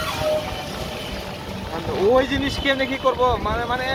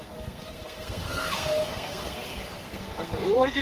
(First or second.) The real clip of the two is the first